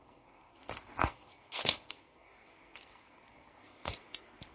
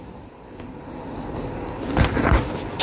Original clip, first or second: second